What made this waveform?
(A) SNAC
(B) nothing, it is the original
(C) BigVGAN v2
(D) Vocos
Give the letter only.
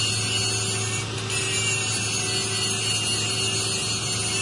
B